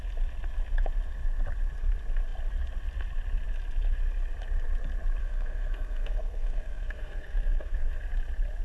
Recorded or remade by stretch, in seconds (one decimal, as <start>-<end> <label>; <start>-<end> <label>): 0.0-5.2 recorded; 5.2-8.0 remade; 8.0-8.6 recorded